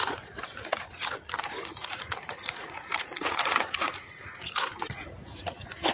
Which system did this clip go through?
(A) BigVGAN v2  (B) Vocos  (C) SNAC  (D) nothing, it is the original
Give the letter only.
B